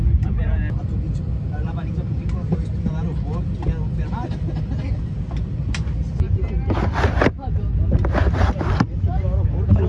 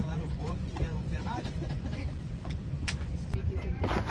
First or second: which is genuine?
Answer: first